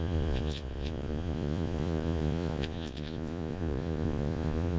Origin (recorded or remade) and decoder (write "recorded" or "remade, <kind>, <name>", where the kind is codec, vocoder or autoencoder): remade, vocoder, Vocos